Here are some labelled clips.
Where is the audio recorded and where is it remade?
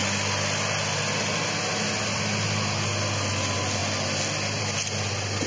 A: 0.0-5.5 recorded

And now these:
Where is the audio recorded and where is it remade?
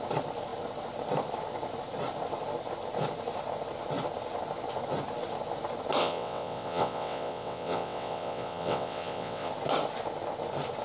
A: 0.0-6.0 recorded; 6.0-9.5 remade; 9.5-10.8 recorded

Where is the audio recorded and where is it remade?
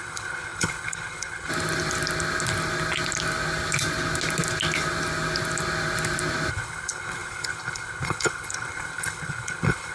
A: 0.0-1.5 remade; 1.5-6.5 recorded; 6.5-9.9 remade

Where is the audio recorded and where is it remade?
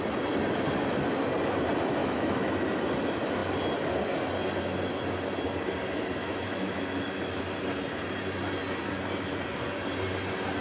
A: 0.0-2.0 recorded; 2.0-2.5 remade; 2.5-6.2 recorded; 6.2-7.4 remade; 7.4-10.6 recorded